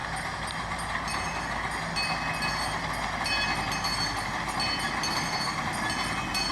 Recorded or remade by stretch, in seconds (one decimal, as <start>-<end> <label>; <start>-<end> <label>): 0.0-6.5 recorded